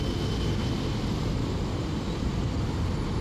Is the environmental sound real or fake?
real